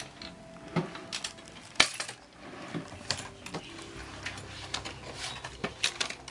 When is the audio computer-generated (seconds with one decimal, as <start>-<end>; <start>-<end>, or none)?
none